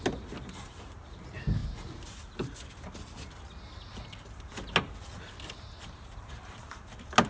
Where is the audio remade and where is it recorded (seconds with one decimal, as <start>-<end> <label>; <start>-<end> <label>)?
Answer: 0.0-7.3 recorded